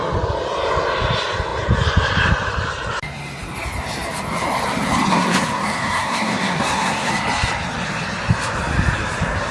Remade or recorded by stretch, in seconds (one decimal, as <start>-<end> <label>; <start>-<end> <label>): 0.0-5.1 recorded; 5.1-7.1 remade; 7.1-9.5 recorded